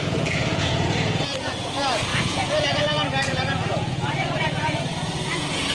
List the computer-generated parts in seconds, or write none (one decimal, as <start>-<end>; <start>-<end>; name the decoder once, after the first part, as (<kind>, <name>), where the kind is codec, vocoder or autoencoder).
0.0-5.7 (vocoder, Vocos)